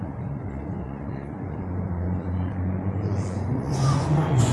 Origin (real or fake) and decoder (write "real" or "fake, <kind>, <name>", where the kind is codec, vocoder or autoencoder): fake, vocoder, Vocos